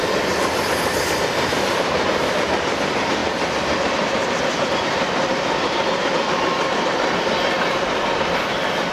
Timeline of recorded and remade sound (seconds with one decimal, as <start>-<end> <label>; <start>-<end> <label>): 0.0-3.2 remade; 3.2-4.7 recorded; 4.7-8.9 remade